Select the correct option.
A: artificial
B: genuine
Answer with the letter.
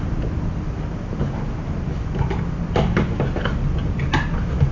B